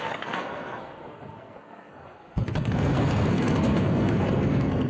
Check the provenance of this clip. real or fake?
fake